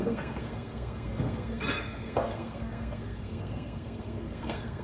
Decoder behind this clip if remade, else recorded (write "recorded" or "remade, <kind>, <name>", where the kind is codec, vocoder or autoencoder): remade, codec, SNAC